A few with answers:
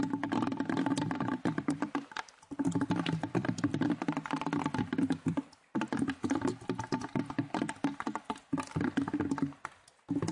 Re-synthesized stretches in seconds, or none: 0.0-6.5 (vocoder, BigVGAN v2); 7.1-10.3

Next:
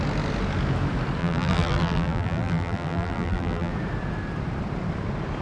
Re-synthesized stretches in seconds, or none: 1.2-3.7 (vocoder, BigVGAN v2)

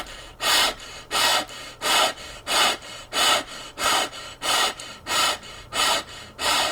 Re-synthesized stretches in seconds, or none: 0.0-1.3 (vocoder, BigVGAN v2); 2.4-6.7